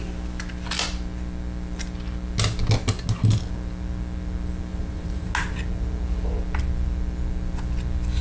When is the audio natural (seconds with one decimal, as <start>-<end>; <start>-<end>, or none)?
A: 0.0-4.7; 5.3-8.2